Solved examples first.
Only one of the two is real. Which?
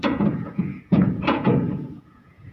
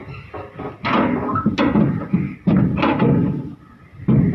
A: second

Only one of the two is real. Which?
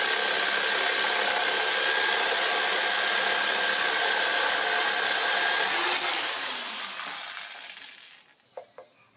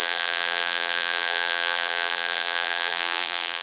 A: first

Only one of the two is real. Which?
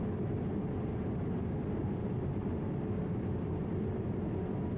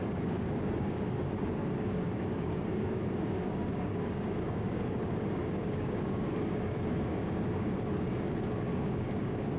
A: first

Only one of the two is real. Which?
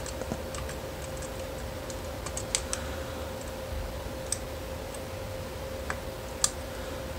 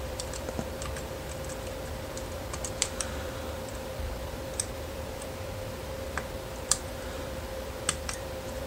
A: first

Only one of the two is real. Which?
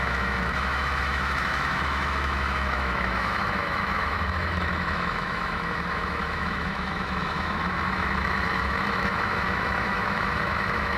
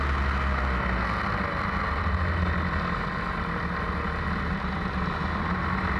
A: second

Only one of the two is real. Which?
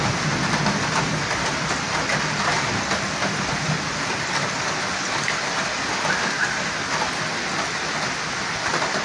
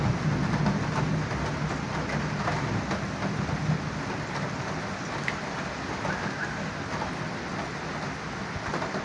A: second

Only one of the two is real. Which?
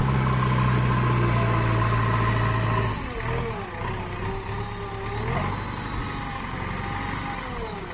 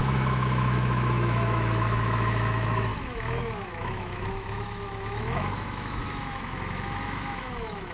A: first